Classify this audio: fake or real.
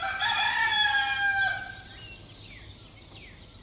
real